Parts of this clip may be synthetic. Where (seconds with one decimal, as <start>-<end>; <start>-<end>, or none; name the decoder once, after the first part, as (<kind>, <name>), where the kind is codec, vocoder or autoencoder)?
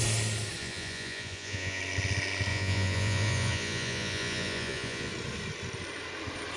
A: 0.6-1.8 (vocoder, Vocos); 2.5-5.1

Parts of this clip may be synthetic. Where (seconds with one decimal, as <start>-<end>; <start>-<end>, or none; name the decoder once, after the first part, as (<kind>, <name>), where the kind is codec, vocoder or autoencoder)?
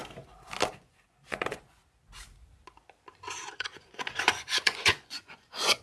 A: 0.7-1.8 (vocoder, Vocos); 3.5-5.8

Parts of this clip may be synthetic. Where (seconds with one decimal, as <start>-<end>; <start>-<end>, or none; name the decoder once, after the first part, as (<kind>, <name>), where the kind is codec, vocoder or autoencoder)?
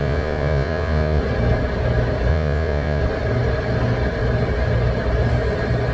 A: 0.0-1.2 (vocoder, Vocos); 2.3-3.0